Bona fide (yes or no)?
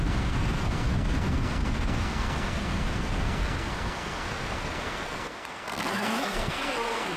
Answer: no